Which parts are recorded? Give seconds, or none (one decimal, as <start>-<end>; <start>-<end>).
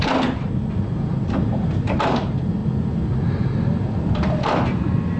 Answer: 0.0-5.2